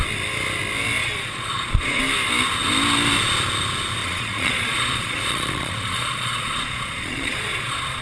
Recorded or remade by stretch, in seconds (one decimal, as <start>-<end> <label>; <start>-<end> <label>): 0.0-1.0 recorded; 1.0-2.0 remade; 2.0-4.0 recorded; 4.0-8.0 remade